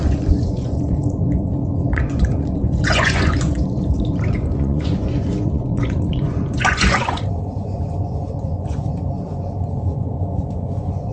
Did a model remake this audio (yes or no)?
yes